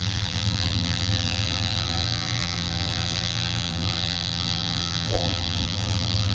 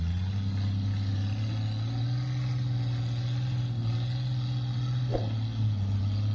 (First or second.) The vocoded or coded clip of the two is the first